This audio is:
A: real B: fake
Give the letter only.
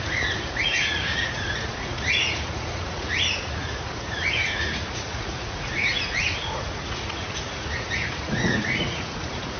B